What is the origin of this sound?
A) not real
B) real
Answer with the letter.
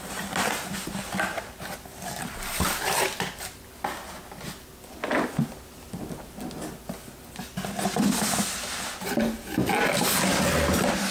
B